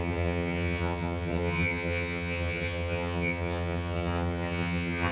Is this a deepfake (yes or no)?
yes